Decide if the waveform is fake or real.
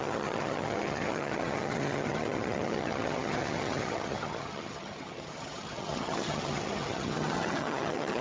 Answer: fake